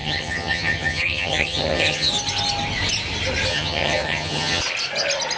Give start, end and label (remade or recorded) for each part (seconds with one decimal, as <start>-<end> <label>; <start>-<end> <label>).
0.0-2.1 remade; 2.1-3.5 recorded; 3.5-4.6 remade; 4.6-5.4 recorded